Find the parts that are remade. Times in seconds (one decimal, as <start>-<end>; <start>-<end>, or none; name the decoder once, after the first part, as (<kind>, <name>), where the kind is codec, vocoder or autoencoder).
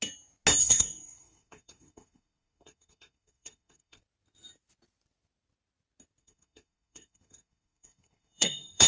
0.6-4.0 (codec, SNAC); 6.2-8.9